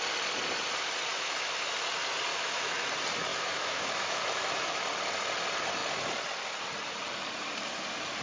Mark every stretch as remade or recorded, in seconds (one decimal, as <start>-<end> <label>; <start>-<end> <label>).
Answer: 0.0-1.1 recorded; 1.1-1.7 remade; 1.7-2.3 recorded; 2.3-2.9 remade; 2.9-3.3 recorded; 3.3-4.8 remade; 4.8-8.2 recorded